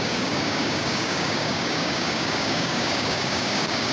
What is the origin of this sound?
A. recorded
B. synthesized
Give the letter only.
B